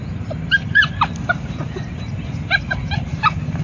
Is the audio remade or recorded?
remade